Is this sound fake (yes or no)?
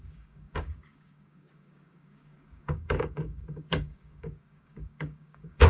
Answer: yes